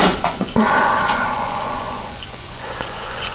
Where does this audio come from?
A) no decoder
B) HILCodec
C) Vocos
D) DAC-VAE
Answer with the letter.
C